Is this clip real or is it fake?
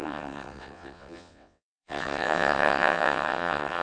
fake